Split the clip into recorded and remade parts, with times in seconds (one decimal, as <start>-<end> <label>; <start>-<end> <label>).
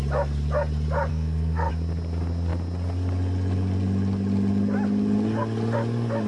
0.0-1.1 recorded; 1.1-1.7 remade; 1.7-6.3 recorded